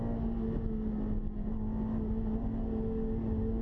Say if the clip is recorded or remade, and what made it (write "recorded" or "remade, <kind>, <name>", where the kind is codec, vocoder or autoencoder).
recorded